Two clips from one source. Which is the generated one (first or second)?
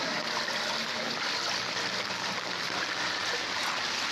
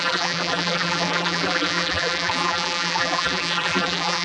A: second